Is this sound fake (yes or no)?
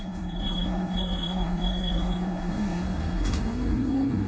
yes